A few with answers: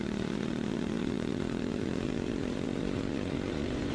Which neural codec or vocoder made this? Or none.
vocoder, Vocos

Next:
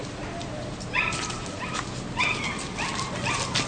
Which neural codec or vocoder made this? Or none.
none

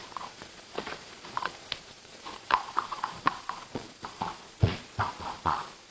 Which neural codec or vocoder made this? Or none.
vocoder, Vocos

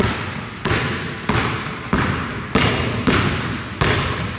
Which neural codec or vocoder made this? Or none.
none